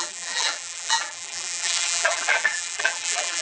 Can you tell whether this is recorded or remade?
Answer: remade